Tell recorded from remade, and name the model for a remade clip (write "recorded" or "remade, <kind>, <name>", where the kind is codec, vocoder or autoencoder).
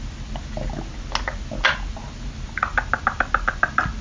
recorded